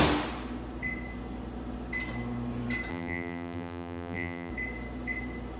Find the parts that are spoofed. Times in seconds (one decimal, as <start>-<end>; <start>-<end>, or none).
2.9-4.5